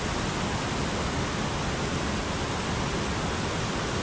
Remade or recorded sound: recorded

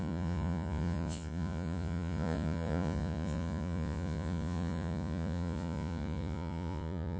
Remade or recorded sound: remade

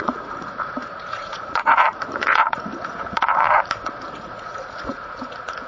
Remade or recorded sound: remade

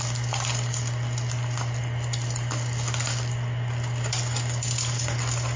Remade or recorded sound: recorded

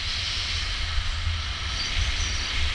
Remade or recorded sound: recorded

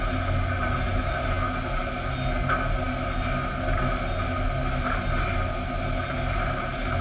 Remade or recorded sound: recorded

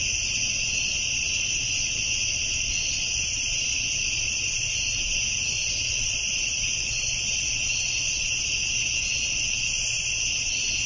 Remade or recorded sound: recorded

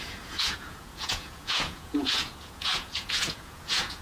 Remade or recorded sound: remade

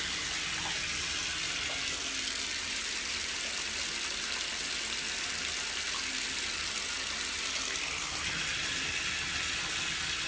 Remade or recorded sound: recorded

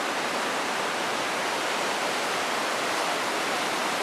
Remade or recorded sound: recorded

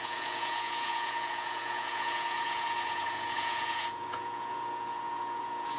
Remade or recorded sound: remade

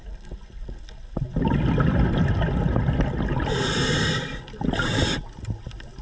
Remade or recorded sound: recorded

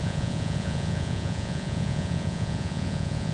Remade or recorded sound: remade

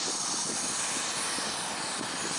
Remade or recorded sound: recorded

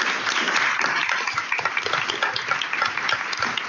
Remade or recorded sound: recorded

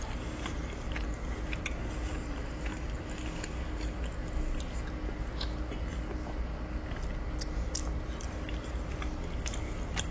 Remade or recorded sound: recorded